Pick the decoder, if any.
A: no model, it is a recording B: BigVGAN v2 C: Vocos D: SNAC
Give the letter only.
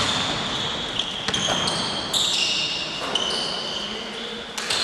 A